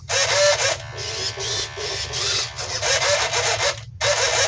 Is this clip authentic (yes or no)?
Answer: yes